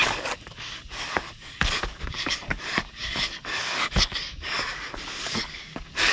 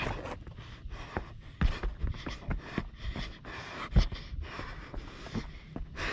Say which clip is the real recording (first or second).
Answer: second